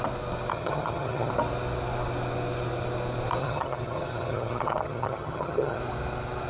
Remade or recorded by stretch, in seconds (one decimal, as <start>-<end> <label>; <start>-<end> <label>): 0.0-0.5 recorded; 0.5-1.3 remade; 1.3-3.4 recorded; 3.4-5.8 remade; 5.8-6.5 recorded

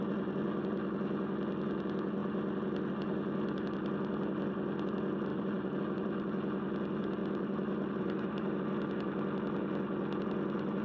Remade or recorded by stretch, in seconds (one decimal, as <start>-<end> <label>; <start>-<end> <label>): 0.0-5.3 recorded; 5.3-5.8 remade; 5.8-7.2 recorded; 7.2-8.6 remade; 8.6-10.8 recorded

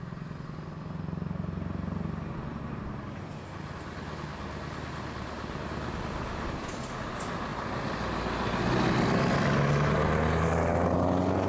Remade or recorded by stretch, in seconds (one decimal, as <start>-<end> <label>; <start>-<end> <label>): 0.0-11.5 recorded

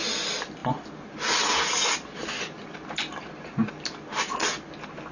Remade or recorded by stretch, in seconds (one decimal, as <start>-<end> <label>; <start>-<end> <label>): 0.0-5.1 recorded

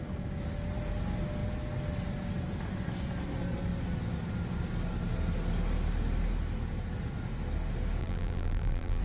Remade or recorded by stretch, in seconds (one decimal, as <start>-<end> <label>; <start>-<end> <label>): 0.0-8.0 recorded; 8.0-9.0 remade